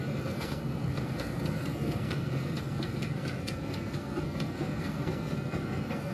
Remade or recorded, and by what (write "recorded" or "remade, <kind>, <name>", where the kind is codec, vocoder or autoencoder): remade, codec, SNAC